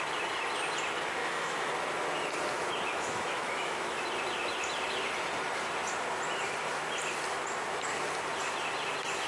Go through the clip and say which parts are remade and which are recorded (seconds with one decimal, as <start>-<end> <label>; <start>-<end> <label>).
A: 0.0-1.2 recorded; 1.2-1.7 remade; 1.7-2.9 recorded; 2.9-4.0 remade; 4.0-9.3 recorded